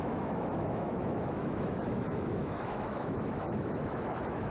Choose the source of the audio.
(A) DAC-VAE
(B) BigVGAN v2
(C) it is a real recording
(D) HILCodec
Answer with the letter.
A